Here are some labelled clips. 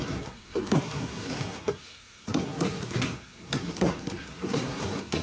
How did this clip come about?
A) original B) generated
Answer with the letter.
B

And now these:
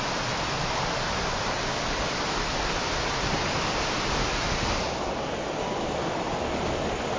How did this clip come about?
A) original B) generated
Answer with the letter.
A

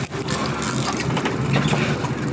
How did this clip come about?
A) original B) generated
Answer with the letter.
A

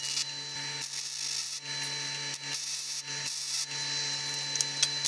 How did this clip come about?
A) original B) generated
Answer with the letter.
A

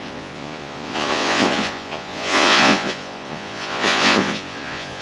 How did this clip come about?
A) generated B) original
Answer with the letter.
A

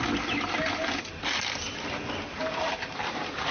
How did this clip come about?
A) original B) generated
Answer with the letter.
A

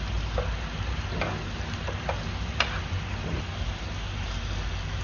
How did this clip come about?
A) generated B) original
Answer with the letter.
B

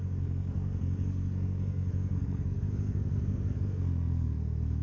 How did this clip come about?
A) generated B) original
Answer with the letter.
A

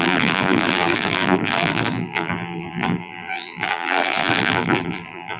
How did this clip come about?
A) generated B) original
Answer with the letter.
A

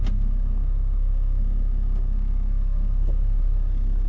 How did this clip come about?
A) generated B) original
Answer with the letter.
A